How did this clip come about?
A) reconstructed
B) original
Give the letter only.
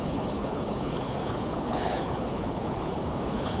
A